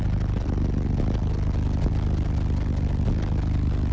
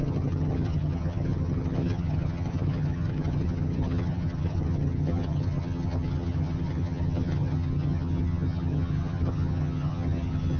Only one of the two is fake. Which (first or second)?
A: second